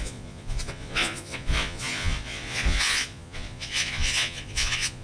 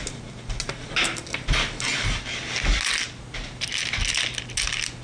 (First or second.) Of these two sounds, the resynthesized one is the first